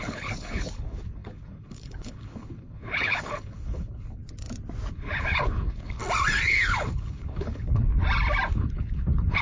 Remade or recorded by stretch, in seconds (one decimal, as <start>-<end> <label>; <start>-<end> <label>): 0.0-4.2 remade; 4.2-4.9 recorded; 4.9-6.0 remade; 6.0-6.5 recorded; 6.5-7.9 remade; 7.9-8.5 recorded; 8.5-9.4 remade